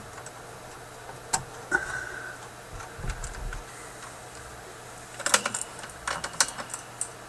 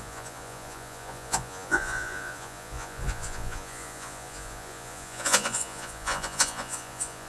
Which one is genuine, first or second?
first